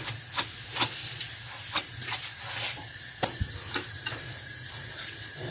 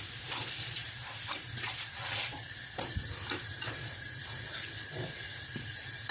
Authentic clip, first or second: first